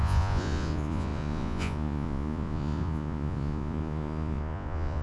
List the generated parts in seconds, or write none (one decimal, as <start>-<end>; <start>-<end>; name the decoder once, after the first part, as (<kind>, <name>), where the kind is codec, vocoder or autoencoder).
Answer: 0.0-5.0 (vocoder, Vocos)